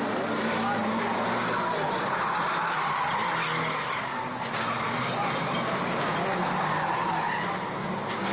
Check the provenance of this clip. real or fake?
real